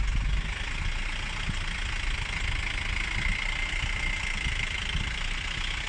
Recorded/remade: recorded